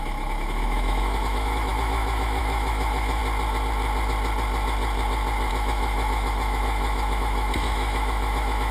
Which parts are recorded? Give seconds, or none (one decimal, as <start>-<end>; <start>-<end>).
3.2-5.5